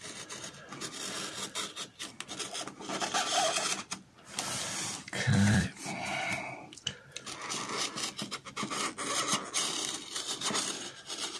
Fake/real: fake